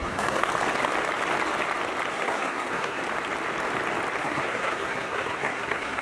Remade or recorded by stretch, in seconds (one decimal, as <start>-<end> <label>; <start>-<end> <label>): 0.0-0.5 remade; 0.5-2.1 recorded; 2.1-3.0 remade; 3.0-4.2 recorded; 4.2-6.0 remade